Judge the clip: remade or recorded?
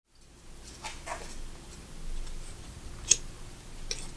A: recorded